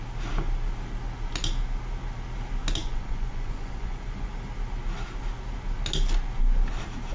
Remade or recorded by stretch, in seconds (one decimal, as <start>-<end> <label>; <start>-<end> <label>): 0.0-2.8 recorded; 2.8-4.3 remade; 4.3-7.1 recorded